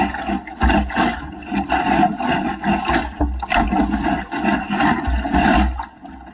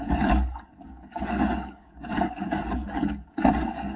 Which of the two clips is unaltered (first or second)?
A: first